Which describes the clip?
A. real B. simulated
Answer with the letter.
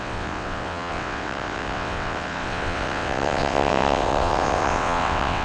B